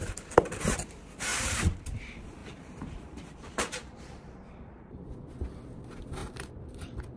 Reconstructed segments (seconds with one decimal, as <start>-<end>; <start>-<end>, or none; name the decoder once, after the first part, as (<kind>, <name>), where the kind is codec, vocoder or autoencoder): 2.4-5.0 (vocoder, BigVGAN v2); 6.2-6.8